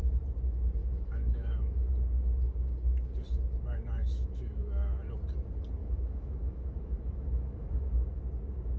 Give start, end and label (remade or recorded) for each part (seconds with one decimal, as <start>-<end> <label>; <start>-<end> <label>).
0.0-0.8 recorded; 0.8-1.9 remade; 1.9-4.0 recorded; 4.0-5.0 remade; 5.0-5.8 recorded; 5.8-8.2 remade; 8.2-8.8 recorded